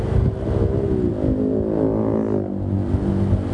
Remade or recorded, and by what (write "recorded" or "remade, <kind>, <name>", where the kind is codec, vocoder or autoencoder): recorded